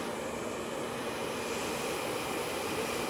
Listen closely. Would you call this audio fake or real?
real